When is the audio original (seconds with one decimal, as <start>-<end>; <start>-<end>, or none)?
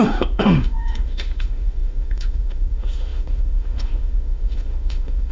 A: none